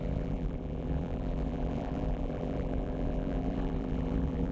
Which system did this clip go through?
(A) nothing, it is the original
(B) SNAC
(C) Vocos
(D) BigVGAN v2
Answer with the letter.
D